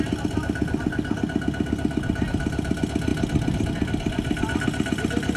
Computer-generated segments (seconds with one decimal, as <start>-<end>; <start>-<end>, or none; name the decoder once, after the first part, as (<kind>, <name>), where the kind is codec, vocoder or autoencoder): none